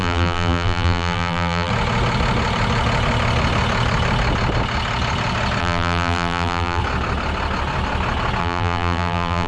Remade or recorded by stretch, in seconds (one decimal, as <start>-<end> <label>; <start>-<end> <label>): 0.0-1.7 remade; 1.7-5.6 recorded; 5.6-6.8 remade; 6.8-8.4 recorded; 8.4-9.5 remade